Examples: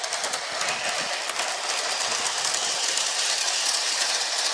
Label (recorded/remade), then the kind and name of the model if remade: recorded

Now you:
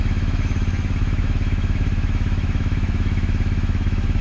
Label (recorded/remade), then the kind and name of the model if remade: remade, autoencoder, DAC-VAE